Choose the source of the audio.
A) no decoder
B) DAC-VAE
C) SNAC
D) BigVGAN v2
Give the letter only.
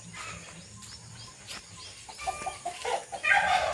A